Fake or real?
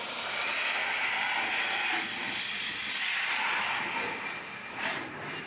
real